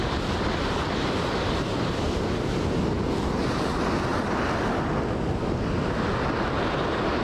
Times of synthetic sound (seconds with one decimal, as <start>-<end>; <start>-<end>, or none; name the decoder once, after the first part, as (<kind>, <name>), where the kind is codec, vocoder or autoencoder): none